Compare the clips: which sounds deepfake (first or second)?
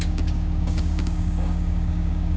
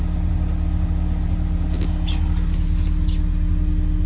first